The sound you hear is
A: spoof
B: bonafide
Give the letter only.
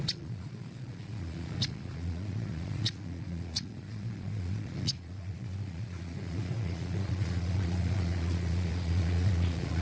A